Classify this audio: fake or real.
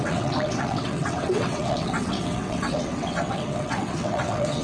fake